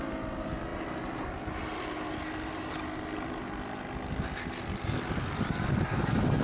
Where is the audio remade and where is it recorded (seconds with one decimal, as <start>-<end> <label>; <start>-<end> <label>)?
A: 0.0-6.4 recorded